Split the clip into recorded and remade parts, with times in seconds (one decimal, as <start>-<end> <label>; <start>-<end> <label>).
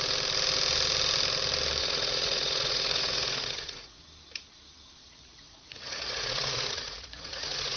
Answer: 0.0-1.8 recorded; 1.8-4.0 remade; 4.0-5.1 recorded; 5.1-7.8 remade